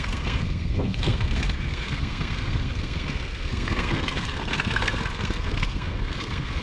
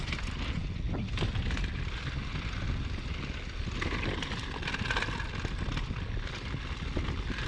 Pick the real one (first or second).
second